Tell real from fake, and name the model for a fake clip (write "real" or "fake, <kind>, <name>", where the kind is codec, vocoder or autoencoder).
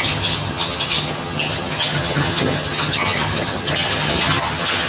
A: fake, vocoder, HiFi-GAN